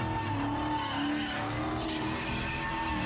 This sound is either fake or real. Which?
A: real